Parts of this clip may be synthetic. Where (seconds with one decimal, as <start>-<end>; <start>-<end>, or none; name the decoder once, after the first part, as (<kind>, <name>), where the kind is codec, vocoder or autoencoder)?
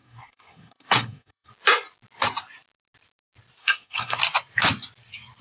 0.0-1.5 (codec, SNAC); 3.6-4.2